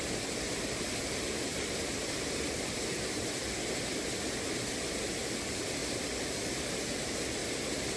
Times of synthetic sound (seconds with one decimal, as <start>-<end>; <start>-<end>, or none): 1.5-5.0; 7.4-8.0